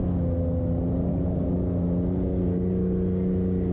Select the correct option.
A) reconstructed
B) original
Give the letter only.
B